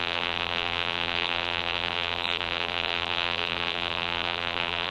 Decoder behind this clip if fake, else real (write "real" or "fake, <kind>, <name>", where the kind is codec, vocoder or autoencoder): fake, vocoder, BigVGAN v2